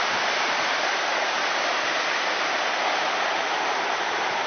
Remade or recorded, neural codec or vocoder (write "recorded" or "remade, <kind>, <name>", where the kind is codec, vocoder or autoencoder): recorded